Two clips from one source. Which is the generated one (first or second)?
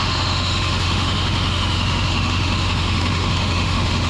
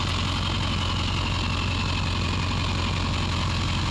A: first